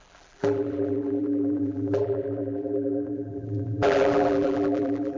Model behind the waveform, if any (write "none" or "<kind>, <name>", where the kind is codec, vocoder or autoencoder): vocoder, BigVGAN v2